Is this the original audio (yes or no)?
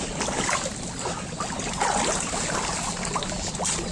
yes